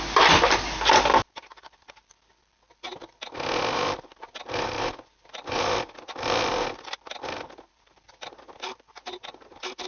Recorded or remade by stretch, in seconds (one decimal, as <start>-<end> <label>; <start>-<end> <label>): 0.0-9.9 recorded